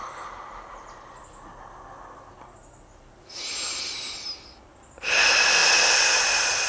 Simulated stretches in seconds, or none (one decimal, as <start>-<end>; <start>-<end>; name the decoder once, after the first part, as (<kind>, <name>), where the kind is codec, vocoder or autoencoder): none